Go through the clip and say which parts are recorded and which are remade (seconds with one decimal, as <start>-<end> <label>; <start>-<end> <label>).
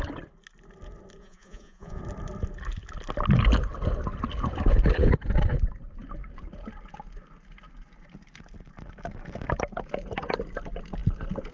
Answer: 0.0-1.2 recorded; 1.2-2.0 remade; 2.0-11.5 recorded